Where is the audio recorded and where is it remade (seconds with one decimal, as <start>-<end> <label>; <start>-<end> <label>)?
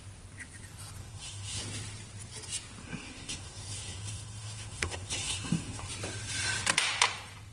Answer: 0.0-1.0 recorded; 1.0-1.6 remade; 1.6-2.8 recorded; 2.8-5.9 remade; 5.9-7.5 recorded